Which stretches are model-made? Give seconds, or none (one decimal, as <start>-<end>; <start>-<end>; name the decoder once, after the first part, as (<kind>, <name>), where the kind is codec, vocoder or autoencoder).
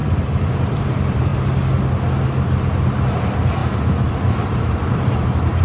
0.0-1.3 (vocoder, BigVGAN v2); 3.1-5.6